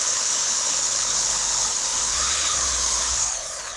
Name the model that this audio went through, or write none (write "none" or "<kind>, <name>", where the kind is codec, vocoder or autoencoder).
codec, HILCodec